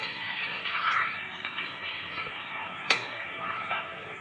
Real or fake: fake